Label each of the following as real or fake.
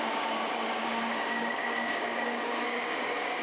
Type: fake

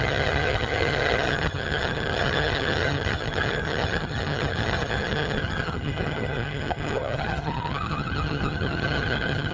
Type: fake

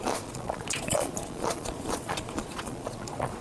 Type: fake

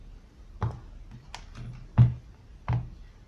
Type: real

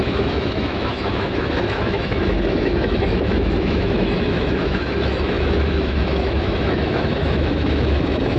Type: fake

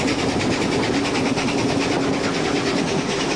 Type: real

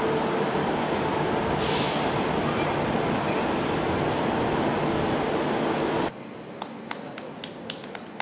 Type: real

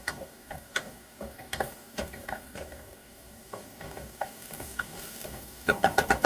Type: fake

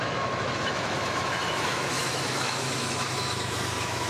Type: fake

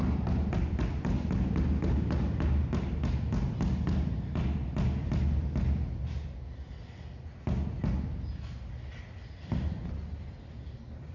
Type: real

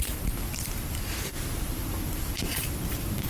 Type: fake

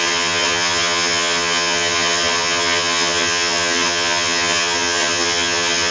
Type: fake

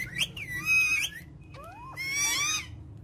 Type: real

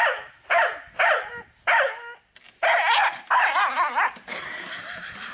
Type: real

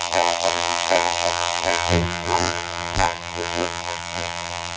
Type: fake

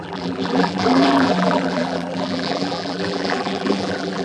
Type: fake